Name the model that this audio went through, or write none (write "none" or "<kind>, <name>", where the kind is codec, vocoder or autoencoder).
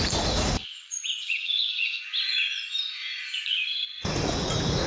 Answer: vocoder, Vocos